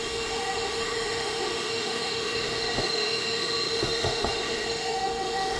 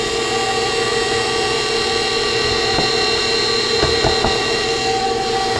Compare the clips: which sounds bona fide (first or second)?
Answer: second